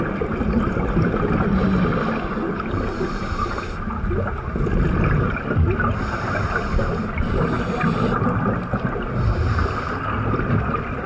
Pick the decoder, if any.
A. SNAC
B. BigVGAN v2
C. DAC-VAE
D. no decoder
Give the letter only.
D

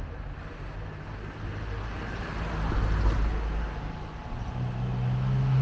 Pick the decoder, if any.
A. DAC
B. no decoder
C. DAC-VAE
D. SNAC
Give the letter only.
B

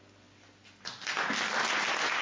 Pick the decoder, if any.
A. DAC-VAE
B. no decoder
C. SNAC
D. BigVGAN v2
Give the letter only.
B